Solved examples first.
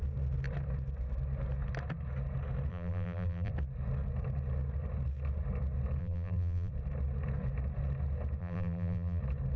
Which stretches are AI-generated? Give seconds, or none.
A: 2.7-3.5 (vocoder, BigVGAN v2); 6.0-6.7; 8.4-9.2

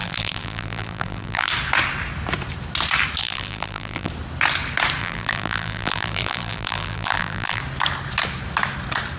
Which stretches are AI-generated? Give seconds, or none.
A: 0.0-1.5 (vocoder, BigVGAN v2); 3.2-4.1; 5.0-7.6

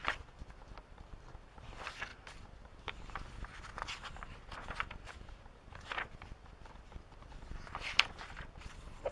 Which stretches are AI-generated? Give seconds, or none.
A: 0.0-2.1 (vocoder, BigVGAN v2); 6.7-9.1

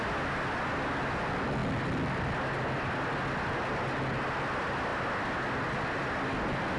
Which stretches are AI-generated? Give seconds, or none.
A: none